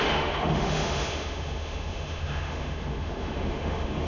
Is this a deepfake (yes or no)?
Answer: yes